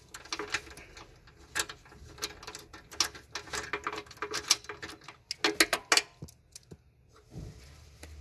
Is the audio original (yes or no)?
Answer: yes